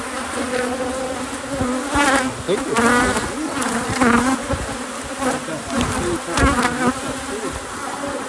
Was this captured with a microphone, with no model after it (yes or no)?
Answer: yes